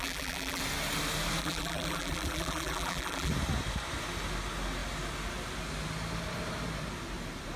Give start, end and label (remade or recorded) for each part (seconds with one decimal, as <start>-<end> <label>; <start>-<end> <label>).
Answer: 0.0-0.6 remade; 0.6-1.4 recorded; 1.4-3.3 remade; 3.3-7.6 recorded